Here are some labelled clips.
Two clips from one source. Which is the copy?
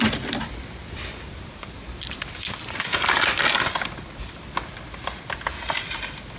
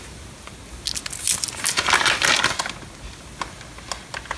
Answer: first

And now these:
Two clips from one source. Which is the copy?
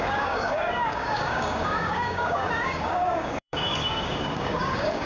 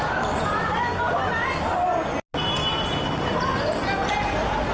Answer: first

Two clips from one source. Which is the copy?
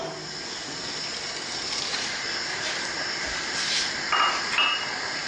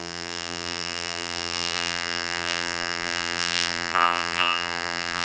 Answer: second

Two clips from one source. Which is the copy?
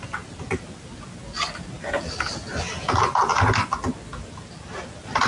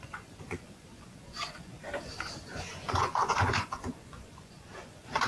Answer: second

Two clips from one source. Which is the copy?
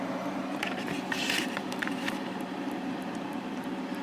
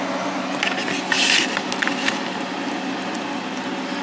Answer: first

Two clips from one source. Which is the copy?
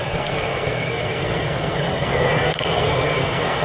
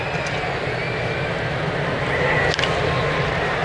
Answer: first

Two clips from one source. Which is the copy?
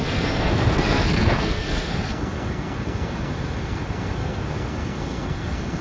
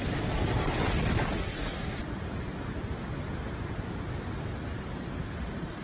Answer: first